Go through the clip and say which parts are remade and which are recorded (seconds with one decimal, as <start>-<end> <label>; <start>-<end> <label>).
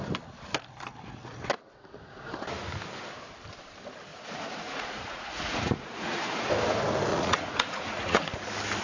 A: 0.0-4.1 recorded; 4.1-6.5 remade; 6.5-7.1 recorded; 7.1-8.2 remade; 8.2-8.8 recorded